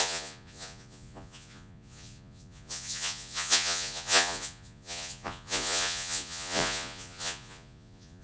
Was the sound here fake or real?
fake